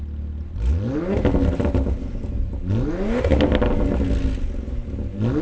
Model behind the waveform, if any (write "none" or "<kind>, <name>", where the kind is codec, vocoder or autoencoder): none